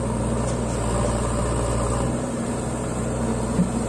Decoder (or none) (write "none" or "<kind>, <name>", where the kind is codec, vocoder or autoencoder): none